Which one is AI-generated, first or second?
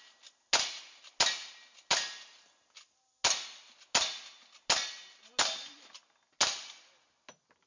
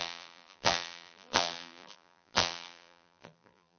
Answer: second